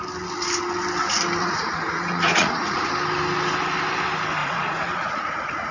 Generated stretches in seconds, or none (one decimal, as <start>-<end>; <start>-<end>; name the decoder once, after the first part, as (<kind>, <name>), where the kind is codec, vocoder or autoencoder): 1.4-2.9 (vocoder, Vocos); 4.4-5.7